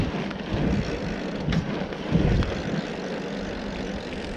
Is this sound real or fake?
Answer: real